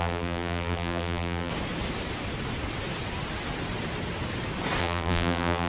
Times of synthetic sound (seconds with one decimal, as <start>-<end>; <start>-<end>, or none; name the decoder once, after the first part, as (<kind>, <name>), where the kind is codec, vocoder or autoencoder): 0.0-1.5 (vocoder, BigVGAN v2); 4.8-5.7